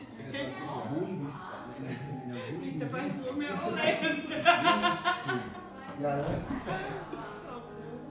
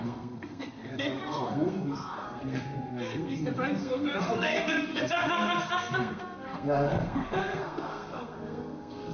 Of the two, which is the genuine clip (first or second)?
first